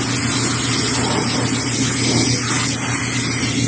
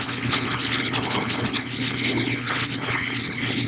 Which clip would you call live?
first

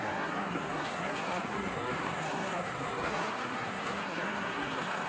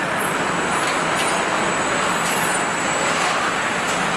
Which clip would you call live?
second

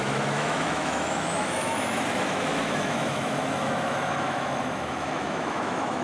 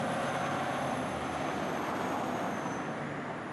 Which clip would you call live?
second